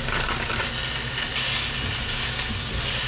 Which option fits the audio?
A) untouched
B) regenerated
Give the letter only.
A